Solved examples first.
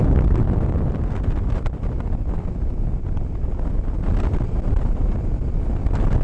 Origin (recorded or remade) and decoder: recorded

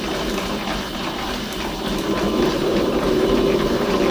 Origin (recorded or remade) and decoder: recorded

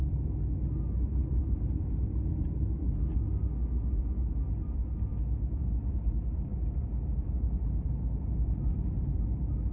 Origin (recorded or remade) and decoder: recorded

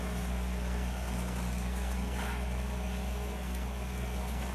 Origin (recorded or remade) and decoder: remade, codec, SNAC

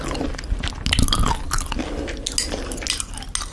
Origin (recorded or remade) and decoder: recorded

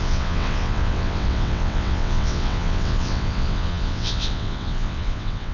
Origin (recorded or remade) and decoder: remade, vocoder, WaveNeXt